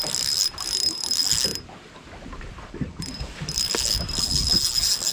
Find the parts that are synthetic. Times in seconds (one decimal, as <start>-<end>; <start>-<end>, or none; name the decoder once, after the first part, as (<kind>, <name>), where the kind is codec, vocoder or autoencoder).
none